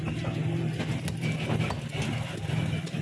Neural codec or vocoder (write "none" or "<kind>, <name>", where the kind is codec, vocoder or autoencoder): none